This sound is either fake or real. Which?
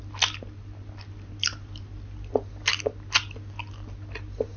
real